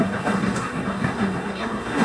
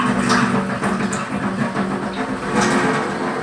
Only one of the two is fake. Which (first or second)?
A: first